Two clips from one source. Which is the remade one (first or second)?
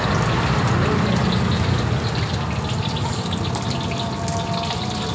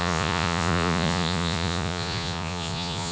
second